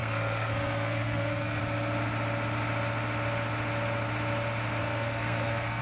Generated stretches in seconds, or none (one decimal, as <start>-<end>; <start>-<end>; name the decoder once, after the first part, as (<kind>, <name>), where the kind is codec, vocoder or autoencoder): 0.0-1.6 (codec, SNAC); 4.8-5.8